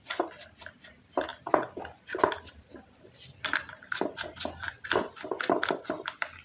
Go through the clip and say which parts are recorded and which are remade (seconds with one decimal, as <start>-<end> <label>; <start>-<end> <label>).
0.0-6.4 recorded